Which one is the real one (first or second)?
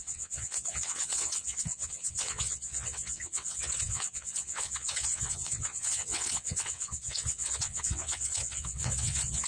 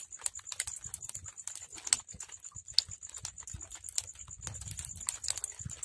second